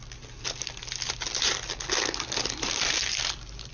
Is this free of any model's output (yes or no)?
yes